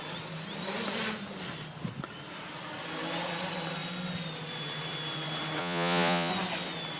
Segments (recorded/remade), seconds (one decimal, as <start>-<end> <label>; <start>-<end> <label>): 0.0-5.6 recorded; 5.6-6.3 remade; 6.3-7.0 recorded